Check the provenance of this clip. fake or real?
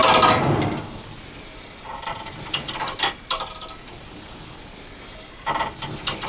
real